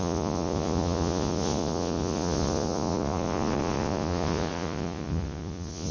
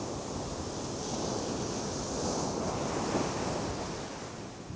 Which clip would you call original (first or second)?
second